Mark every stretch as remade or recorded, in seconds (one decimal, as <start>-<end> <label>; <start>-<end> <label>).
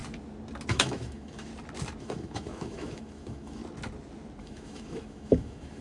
0.0-0.7 recorded; 0.7-1.5 remade; 1.5-2.0 recorded; 2.0-3.6 remade; 3.6-4.4 recorded; 4.4-5.8 remade